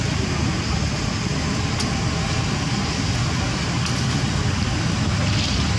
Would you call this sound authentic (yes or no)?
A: yes